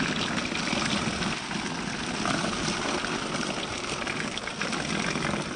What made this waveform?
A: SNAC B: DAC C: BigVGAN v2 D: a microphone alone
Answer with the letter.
D